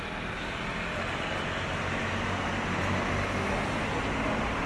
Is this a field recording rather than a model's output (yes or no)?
yes